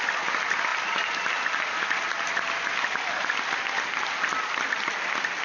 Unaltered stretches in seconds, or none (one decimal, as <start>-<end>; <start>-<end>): 0.0-5.4